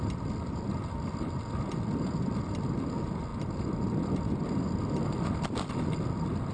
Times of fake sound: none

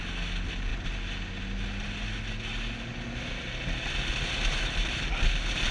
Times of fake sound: none